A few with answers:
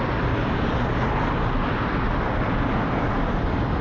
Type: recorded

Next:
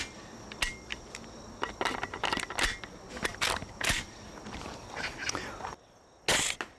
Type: recorded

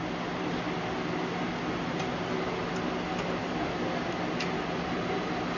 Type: recorded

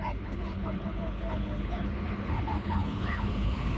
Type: remade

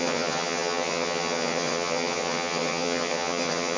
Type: remade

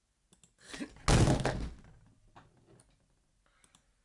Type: recorded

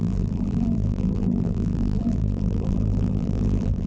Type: remade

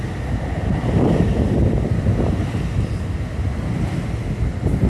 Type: recorded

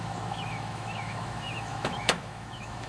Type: remade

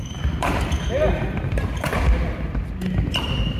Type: remade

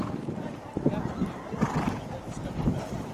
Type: recorded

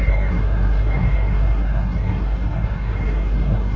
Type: remade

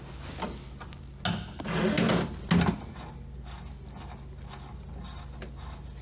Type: recorded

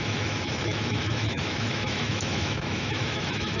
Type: remade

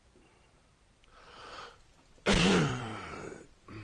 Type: remade